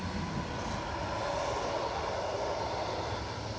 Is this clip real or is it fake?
real